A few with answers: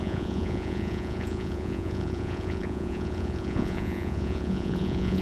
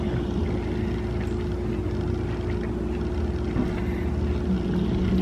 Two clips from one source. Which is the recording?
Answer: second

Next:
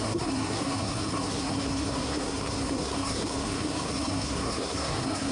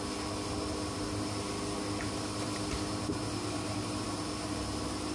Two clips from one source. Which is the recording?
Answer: second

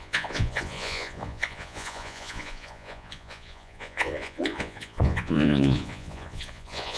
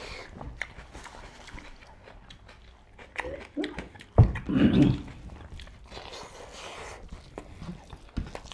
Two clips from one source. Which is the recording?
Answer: second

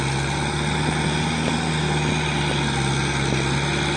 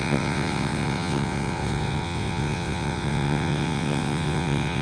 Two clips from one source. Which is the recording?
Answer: first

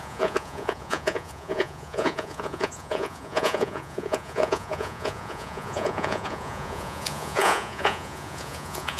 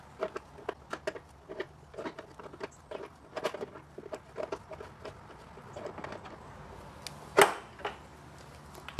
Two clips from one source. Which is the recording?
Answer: second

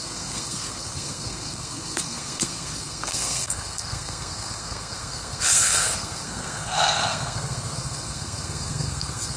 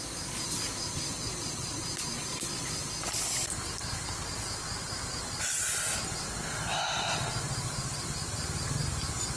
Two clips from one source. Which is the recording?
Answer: second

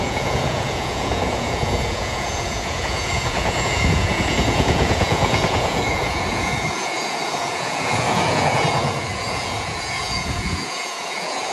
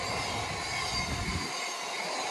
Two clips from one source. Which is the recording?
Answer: second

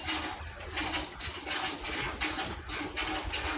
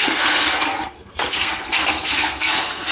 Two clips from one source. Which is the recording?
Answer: first